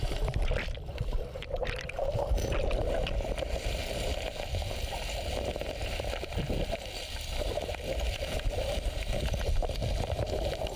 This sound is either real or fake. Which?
fake